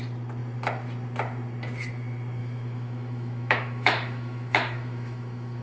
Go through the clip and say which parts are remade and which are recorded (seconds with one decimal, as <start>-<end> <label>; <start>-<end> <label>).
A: 0.0-2.4 recorded; 2.4-5.6 remade